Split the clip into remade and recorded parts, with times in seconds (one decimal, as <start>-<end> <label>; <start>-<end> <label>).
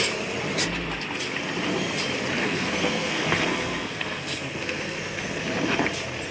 0.0-2.4 recorded; 2.4-5.4 remade; 5.4-6.3 recorded